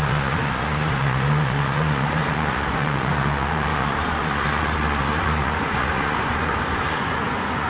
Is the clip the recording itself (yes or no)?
no